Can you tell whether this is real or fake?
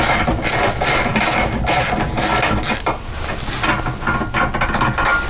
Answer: real